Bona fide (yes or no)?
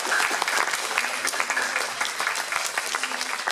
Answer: yes